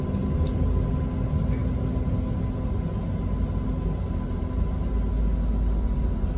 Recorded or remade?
recorded